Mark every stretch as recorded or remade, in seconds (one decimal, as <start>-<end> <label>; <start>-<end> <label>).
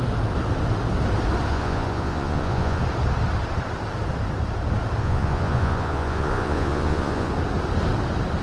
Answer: 0.0-1.5 recorded; 1.5-2.8 remade; 2.8-5.0 recorded; 5.0-7.3 remade; 7.3-8.4 recorded